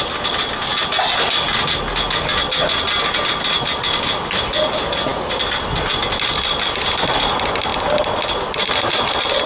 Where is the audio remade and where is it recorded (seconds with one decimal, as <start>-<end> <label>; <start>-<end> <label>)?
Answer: 0.0-9.5 recorded